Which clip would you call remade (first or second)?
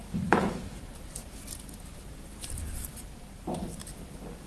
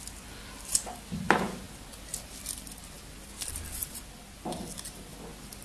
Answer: first